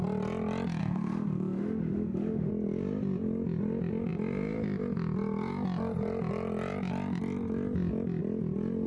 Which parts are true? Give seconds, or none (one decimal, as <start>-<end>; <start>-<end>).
0.0-0.8; 2.5-8.9